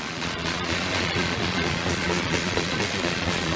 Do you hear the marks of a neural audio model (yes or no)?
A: yes